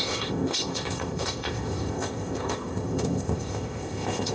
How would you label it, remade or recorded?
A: remade